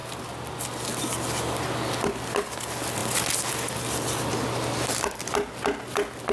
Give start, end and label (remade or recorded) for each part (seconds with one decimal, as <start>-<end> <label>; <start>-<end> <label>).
0.0-6.3 recorded